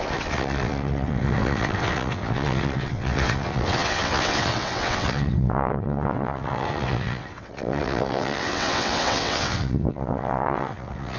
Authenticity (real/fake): fake